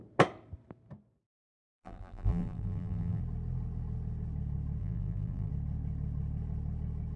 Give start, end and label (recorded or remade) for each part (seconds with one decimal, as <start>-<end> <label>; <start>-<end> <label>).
0.0-1.6 recorded; 1.6-3.2 remade; 3.2-4.8 recorded; 4.8-5.5 remade; 5.5-7.2 recorded